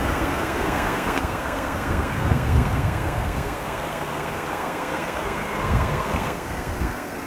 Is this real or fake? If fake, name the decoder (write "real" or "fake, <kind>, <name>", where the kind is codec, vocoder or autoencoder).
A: fake, codec, SNAC